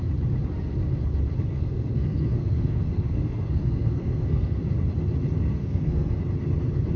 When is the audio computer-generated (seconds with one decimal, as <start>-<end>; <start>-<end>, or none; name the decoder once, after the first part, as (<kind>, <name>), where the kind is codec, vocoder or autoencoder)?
1.5-4.6 (codec, SNAC); 5.6-6.2